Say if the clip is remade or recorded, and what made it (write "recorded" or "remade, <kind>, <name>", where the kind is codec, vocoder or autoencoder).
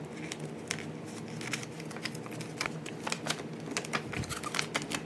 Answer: recorded